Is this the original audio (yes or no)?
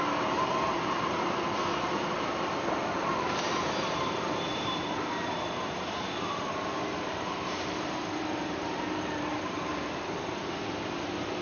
no